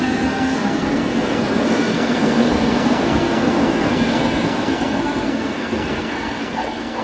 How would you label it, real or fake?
fake